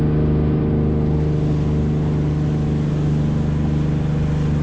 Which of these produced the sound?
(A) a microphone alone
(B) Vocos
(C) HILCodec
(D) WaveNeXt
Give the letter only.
A